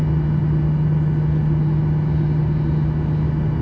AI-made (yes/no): no